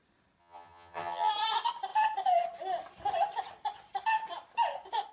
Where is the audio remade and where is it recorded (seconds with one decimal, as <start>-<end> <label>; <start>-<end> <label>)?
0.0-0.4 recorded; 0.4-1.3 remade; 1.3-5.1 recorded